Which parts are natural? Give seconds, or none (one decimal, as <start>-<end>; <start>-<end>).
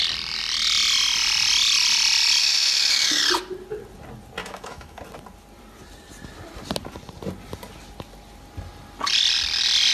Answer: 0.0-2.4; 3.2-4.4; 5.0-9.9